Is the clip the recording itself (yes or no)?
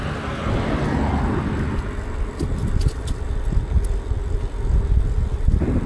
yes